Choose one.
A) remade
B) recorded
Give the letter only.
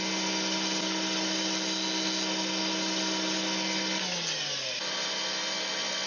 B